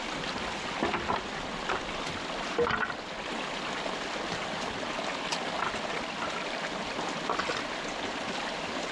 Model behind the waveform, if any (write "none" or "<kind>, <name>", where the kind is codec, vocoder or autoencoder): none